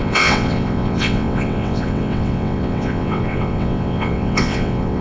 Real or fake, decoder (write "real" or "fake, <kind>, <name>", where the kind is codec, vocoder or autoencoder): fake, vocoder, WaveNeXt